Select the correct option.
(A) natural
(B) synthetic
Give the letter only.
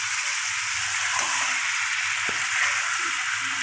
A